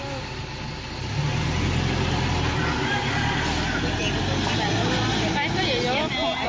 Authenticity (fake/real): real